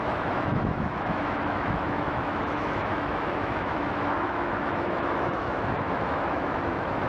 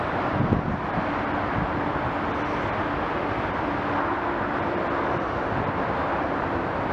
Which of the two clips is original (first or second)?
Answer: second